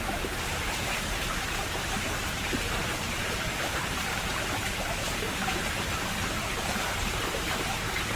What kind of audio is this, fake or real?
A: fake